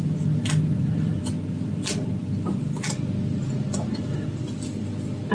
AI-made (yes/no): no